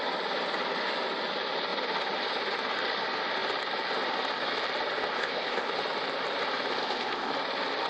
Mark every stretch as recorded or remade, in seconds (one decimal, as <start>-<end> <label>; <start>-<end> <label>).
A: 0.0-5.1 recorded; 5.1-5.7 remade; 5.7-6.7 recorded; 6.7-7.3 remade; 7.3-7.9 recorded